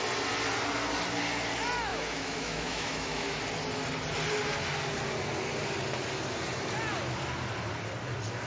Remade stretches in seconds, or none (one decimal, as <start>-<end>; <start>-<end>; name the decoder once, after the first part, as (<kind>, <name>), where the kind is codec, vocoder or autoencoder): 1.9-3.4 (autoencoder, DAC-VAE)